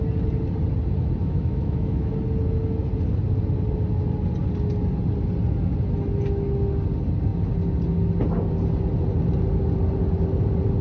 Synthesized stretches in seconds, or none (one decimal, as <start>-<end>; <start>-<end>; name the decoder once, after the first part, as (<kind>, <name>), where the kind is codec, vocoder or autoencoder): 1.2-2.1 (autoencoder, DAC-VAE)